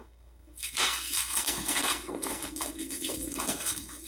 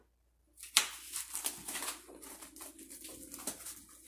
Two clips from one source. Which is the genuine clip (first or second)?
second